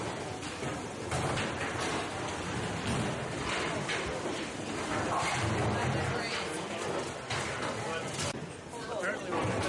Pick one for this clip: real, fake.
real